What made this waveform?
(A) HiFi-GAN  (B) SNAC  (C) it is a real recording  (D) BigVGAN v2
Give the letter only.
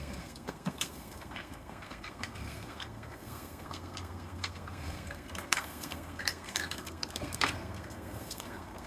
B